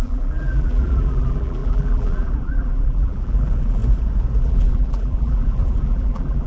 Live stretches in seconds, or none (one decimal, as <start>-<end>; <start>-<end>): 3.8-4.4